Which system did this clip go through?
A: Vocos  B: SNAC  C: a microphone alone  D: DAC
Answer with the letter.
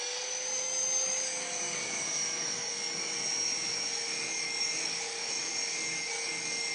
D